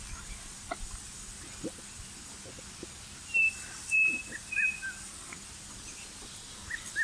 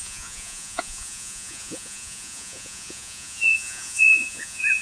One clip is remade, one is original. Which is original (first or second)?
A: first